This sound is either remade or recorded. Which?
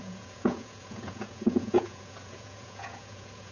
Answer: remade